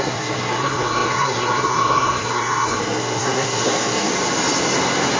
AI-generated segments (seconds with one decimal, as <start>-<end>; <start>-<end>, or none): 0.0-4.1